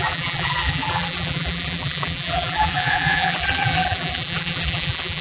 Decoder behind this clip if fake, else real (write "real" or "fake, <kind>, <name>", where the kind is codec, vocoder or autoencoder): fake, vocoder, BigVGAN v2